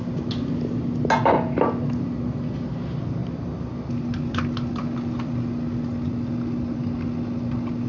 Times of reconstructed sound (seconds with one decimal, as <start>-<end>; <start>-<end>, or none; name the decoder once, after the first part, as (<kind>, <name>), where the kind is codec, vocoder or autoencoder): none